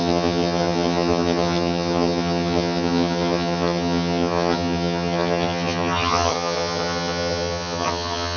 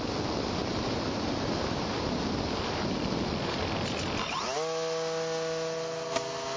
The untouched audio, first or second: second